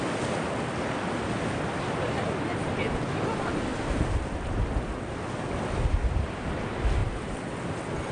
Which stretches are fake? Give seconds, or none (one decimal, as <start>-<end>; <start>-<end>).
none